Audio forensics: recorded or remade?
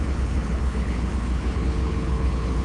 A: remade